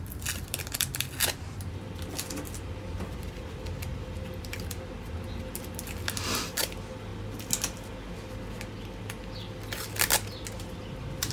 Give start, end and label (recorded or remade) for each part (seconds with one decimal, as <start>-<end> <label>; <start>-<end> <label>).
0.0-11.3 recorded